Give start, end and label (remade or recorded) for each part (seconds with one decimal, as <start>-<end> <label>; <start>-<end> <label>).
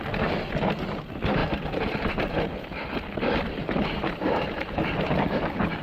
0.0-3.6 recorded; 3.6-4.8 remade; 4.8-5.8 recorded